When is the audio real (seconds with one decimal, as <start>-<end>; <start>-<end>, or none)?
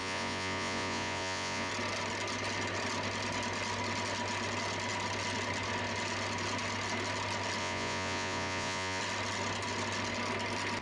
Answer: 1.7-7.6; 9.0-10.8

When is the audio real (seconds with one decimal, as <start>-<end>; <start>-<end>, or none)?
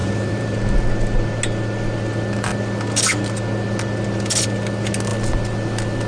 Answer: 0.8-6.1